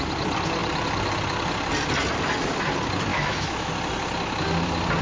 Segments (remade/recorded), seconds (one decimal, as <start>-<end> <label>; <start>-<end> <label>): 0.0-3.1 recorded; 3.1-3.7 remade; 3.7-5.0 recorded